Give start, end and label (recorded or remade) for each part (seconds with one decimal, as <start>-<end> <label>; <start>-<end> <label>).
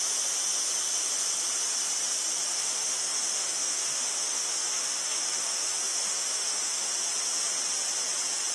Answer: 0.0-2.5 recorded; 2.5-6.9 remade; 6.9-8.5 recorded